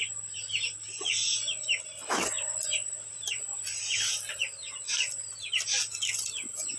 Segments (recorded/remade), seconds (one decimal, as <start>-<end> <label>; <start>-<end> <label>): 0.0-6.8 recorded